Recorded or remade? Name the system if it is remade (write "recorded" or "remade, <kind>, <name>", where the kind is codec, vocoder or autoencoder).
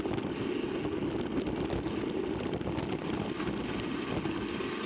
recorded